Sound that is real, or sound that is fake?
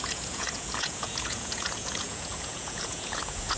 fake